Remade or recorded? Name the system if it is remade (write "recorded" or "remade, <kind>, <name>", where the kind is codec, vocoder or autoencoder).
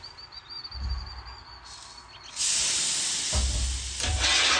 recorded